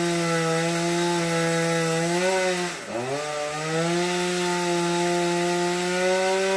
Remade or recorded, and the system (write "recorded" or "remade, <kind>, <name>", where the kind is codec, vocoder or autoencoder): recorded